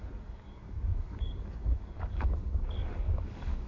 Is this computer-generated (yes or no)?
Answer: yes